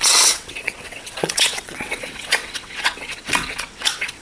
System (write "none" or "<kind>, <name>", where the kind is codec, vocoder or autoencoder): vocoder, WaveNeXt